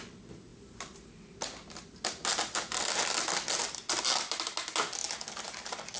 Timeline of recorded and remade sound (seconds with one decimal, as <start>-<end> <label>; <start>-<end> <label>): 0.0-6.0 recorded